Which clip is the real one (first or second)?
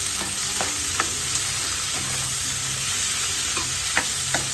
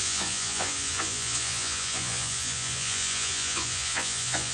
first